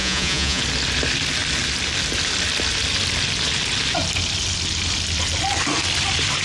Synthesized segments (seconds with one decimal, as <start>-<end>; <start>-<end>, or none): 0.0-0.6